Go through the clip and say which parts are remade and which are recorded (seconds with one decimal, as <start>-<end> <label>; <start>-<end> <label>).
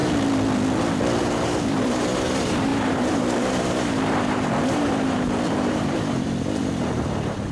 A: 0.0-1.2 recorded; 1.2-7.5 remade